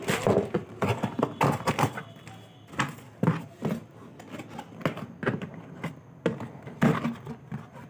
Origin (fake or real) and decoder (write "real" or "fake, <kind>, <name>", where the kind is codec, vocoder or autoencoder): real